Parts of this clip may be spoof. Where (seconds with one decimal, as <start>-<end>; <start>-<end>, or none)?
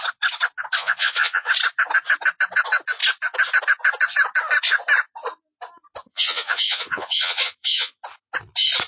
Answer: 0.8-1.5; 6.1-7.9